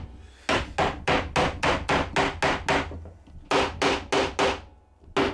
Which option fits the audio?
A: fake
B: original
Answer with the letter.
B